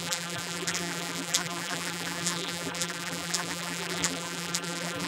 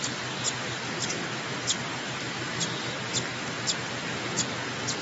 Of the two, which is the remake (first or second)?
first